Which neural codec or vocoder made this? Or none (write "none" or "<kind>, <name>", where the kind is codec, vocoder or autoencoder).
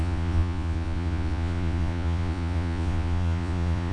vocoder, Vocos